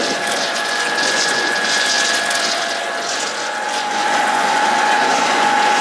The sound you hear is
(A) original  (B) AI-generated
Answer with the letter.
B